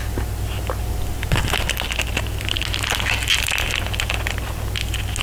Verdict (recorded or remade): recorded